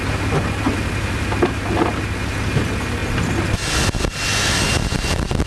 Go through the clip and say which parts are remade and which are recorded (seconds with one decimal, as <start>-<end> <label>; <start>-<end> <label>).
0.0-4.7 recorded; 4.7-5.5 remade